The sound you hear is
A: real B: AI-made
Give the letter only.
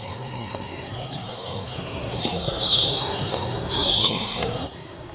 B